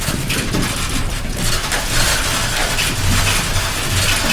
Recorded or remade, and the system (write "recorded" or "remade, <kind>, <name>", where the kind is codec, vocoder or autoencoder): recorded